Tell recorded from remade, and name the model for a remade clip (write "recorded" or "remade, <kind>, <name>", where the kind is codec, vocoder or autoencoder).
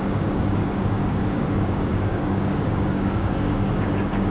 remade, codec, DAC